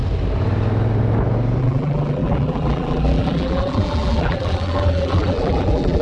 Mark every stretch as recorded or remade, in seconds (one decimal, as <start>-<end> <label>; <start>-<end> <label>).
0.0-1.6 recorded; 1.6-6.0 remade